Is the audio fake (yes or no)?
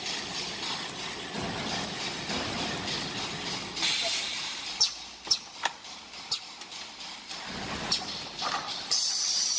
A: no